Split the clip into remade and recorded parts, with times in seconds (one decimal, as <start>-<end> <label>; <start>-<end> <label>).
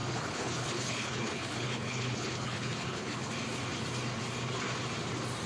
0.0-3.3 remade; 3.3-5.5 recorded